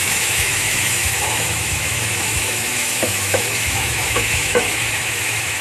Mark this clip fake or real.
fake